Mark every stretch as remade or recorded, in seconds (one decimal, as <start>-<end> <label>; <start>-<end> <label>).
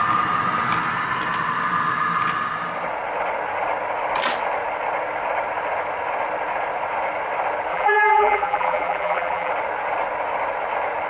0.0-7.7 recorded; 7.7-9.5 remade; 9.5-11.1 recorded